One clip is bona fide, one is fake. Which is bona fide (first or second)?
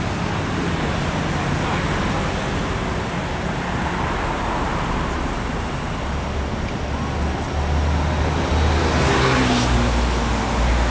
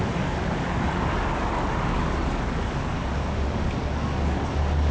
first